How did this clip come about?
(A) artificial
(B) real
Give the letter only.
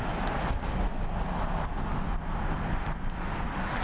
B